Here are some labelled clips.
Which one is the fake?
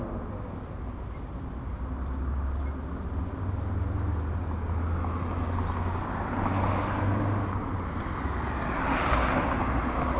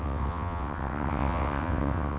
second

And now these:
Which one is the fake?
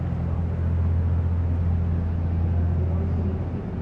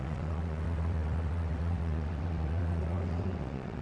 second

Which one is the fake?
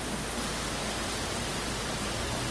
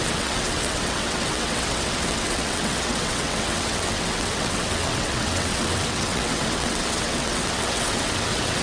second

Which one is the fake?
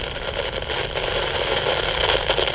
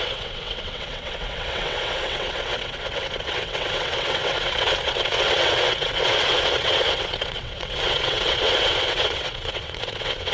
second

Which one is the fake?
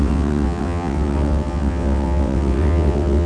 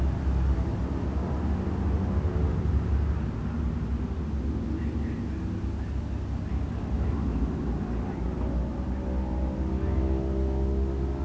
first